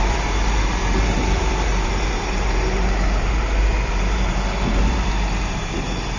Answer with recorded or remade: remade